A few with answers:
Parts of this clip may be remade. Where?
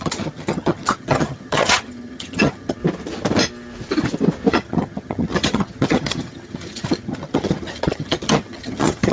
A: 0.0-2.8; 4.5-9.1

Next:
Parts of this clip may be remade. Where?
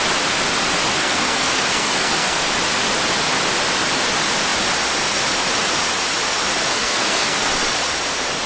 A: 1.0-2.4; 6.7-7.5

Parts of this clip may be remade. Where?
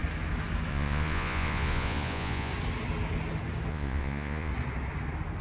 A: 0.7-2.5; 3.7-4.5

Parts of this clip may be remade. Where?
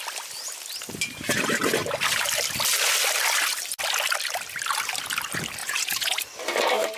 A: 5.6-6.2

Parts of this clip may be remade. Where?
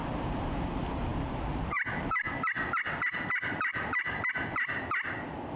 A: 0.0-0.6; 1.1-2.3; 3.7-4.3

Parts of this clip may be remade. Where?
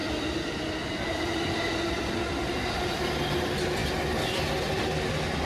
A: 0.0-2.8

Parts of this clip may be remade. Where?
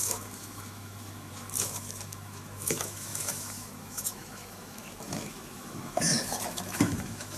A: 0.0-7.4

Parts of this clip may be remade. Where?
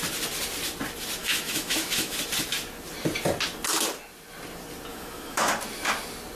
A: 1.2-2.2; 4.9-5.5